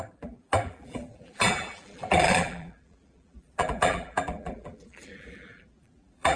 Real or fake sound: fake